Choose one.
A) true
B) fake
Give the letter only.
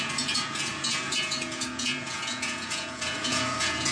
B